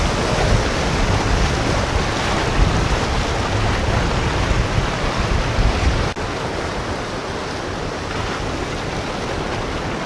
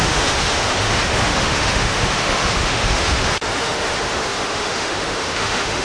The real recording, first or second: first